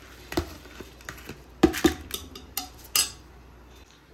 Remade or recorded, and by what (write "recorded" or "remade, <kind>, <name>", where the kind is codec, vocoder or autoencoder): recorded